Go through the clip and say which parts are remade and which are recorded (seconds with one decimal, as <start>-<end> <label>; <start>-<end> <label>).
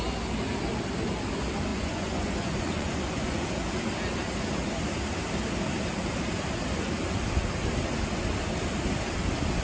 0.0-1.7 recorded; 1.7-3.5 remade; 3.5-9.6 recorded